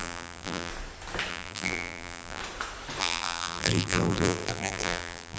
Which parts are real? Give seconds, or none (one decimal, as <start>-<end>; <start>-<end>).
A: 0.7-1.3; 2.4-3.0